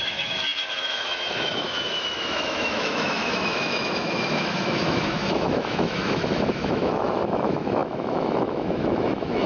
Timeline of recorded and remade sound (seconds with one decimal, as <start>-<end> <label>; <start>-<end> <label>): 0.0-9.5 remade

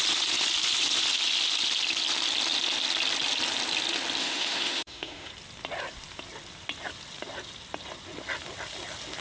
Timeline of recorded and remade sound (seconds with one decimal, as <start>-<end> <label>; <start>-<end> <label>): 0.0-4.2 recorded; 4.2-5.3 remade; 5.3-9.2 recorded

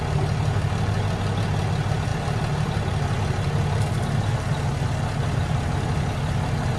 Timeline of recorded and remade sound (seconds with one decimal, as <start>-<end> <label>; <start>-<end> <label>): 0.0-6.8 recorded